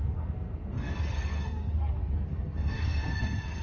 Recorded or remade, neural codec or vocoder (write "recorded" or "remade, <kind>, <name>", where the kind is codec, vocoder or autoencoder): remade, codec, SNAC